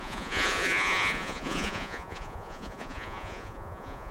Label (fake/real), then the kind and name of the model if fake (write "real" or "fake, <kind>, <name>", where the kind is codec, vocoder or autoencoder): fake, vocoder, Vocos